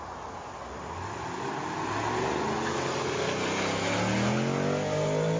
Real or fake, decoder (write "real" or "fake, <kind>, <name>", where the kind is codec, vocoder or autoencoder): real